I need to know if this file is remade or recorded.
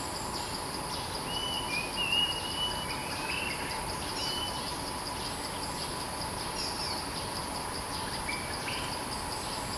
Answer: recorded